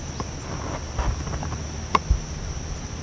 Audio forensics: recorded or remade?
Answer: recorded